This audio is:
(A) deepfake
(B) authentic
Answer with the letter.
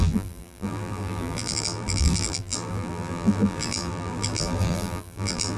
A